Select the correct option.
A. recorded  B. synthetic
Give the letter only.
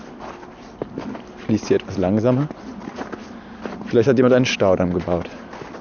A